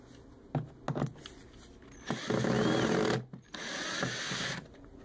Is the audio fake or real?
real